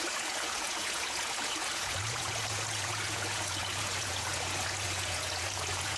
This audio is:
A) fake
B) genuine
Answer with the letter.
A